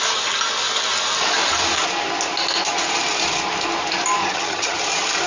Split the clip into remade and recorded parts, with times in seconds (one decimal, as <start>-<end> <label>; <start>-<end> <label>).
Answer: 0.0-4.2 recorded; 4.2-4.8 remade; 4.8-5.3 recorded